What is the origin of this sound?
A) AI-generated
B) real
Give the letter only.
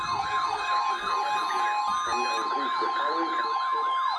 B